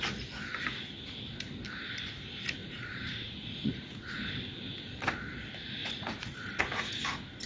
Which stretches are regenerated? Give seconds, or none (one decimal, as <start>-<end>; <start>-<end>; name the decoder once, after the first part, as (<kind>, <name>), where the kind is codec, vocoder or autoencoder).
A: 2.6-4.2 (vocoder, Vocos); 5.8-6.6